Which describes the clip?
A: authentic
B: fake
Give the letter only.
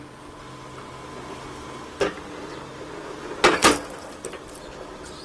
A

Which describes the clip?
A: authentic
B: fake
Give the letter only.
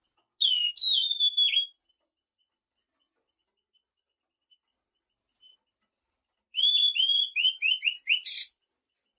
A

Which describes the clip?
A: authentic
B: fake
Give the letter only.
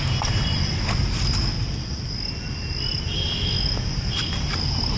A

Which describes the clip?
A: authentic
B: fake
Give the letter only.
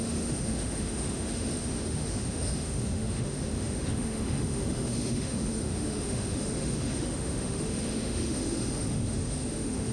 B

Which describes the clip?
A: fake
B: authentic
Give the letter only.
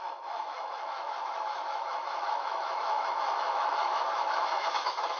A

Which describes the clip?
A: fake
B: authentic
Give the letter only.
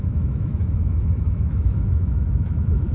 A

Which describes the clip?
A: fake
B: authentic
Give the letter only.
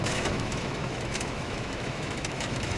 A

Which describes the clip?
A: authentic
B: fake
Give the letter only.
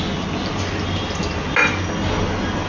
A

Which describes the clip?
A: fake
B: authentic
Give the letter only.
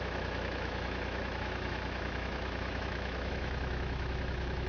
A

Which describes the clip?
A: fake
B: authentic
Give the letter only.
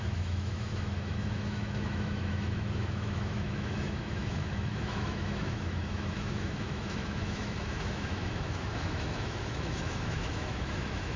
A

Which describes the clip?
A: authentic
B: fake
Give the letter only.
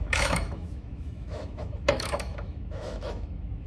B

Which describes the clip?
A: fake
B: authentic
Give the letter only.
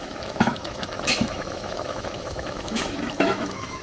A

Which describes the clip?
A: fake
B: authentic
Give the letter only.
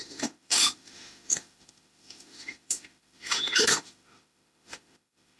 A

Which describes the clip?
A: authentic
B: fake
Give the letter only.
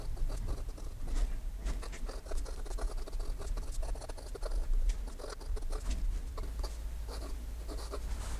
A